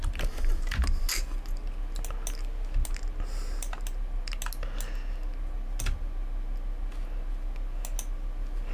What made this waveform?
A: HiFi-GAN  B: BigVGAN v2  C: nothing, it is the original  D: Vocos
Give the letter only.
C